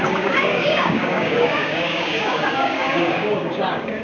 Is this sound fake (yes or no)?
yes